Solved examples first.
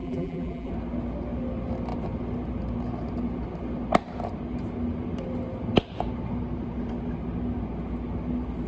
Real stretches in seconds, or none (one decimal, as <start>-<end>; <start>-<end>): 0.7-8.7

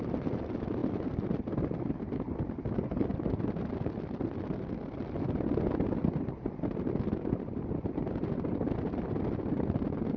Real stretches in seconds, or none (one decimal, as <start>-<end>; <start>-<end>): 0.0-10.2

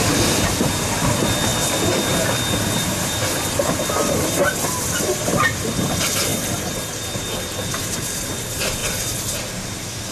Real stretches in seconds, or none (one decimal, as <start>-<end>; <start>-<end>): 1.5-2.9; 6.3-8.3; 8.8-10.1